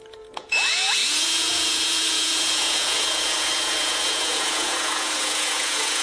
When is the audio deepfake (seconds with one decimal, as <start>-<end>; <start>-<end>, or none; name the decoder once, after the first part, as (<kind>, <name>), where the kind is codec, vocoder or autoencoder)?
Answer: 0.0-6.0 (vocoder, Vocos)